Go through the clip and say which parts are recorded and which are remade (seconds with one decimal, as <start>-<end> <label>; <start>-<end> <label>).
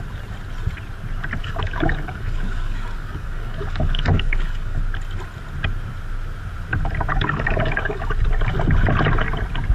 0.0-1.4 recorded; 1.4-4.8 remade; 4.8-7.1 recorded; 7.1-8.1 remade; 8.1-9.7 recorded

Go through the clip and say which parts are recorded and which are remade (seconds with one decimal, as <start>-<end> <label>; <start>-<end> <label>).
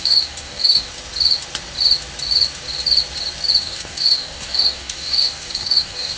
0.0-0.9 remade; 0.9-3.6 recorded; 3.6-6.2 remade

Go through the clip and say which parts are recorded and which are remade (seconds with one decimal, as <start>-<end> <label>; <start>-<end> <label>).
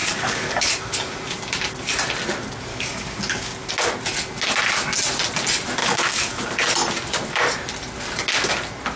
0.0-0.7 remade; 0.7-2.7 recorded; 2.7-3.7 remade; 3.7-5.8 recorded; 5.8-6.4 remade; 6.4-9.0 recorded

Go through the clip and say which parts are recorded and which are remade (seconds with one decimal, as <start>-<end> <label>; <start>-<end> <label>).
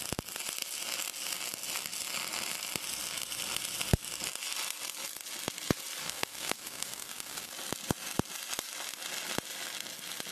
0.0-6.0 recorded; 6.0-7.5 remade; 7.5-10.3 recorded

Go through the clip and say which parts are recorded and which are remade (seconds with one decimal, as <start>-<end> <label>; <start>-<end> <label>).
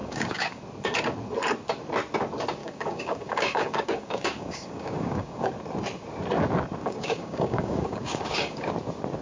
0.0-0.6 remade; 0.6-2.6 recorded; 2.6-5.5 remade; 5.5-6.8 recorded; 6.8-8.7 remade; 8.7-9.2 recorded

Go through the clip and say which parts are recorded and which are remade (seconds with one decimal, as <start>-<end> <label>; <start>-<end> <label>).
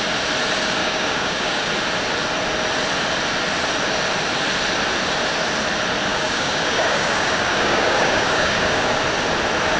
0.0-0.8 recorded; 0.8-1.7 remade; 1.7-6.1 recorded; 6.1-8.9 remade; 8.9-9.8 recorded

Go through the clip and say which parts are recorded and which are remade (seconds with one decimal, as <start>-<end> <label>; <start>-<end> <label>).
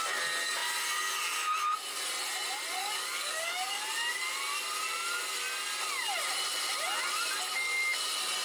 0.0-2.8 recorded; 2.8-3.8 remade; 3.8-8.4 recorded